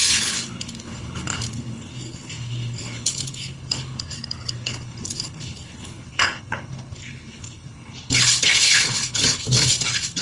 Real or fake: fake